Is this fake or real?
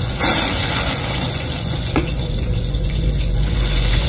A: fake